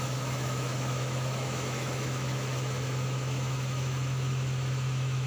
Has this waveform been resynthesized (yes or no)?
yes